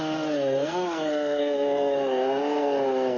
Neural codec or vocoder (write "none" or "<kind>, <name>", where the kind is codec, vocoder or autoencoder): codec, SNAC